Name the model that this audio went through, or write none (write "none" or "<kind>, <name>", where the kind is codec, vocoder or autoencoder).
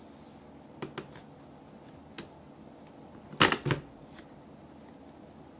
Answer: none